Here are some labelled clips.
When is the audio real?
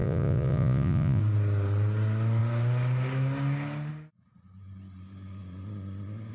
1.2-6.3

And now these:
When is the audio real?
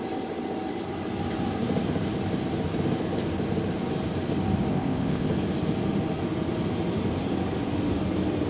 0.0-4.7; 5.3-8.5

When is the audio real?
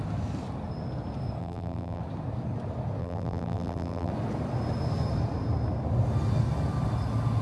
0.0-1.4; 2.0-3.0; 4.1-7.4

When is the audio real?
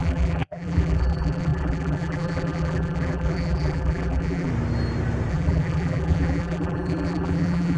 4.5-5.3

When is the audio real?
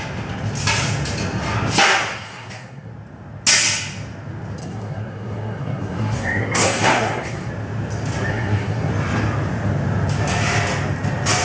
0.0-2.0; 2.9-4.6; 7.5-8.3; 8.9-11.4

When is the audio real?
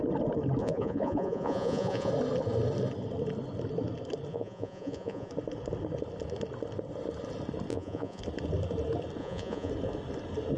0.0-0.6; 2.1-4.3; 5.3-7.7; 8.2-9.2; 9.7-10.6